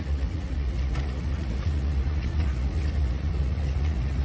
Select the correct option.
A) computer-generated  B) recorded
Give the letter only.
A